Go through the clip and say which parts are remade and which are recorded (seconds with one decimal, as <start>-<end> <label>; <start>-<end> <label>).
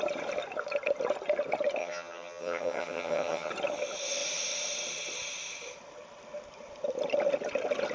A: 0.0-1.8 recorded; 1.8-3.5 remade; 3.5-7.9 recorded